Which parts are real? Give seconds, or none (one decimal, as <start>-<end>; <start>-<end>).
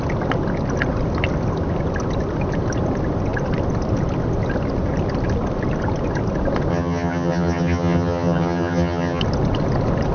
0.0-6.7; 9.2-10.1